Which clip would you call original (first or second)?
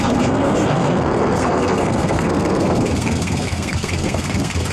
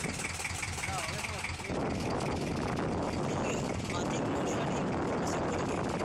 second